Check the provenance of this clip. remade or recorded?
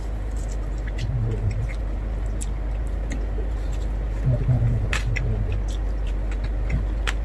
recorded